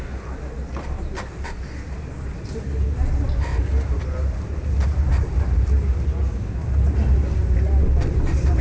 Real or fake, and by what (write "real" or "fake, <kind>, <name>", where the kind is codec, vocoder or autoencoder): real